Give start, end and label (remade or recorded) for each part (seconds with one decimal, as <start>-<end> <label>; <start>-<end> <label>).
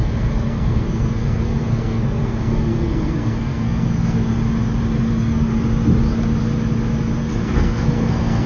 0.0-4.3 remade; 4.3-5.1 recorded; 5.1-5.5 remade; 5.5-7.2 recorded; 7.2-8.5 remade